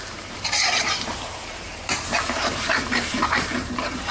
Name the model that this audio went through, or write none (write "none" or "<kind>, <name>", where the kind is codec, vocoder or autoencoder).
vocoder, BigVGAN v2